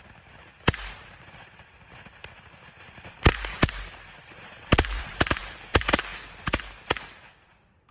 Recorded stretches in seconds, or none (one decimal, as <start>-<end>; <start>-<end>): 0.0-1.0; 5.4-7.9